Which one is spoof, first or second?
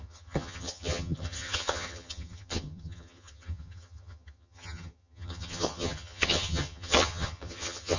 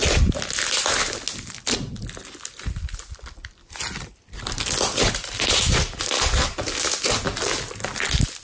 first